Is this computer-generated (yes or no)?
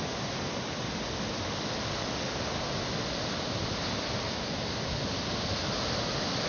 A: no